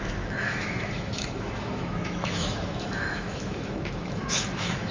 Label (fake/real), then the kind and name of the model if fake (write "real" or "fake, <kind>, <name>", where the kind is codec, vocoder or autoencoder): fake, autoencoder, DAC-VAE